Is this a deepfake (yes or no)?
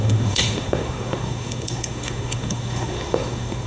yes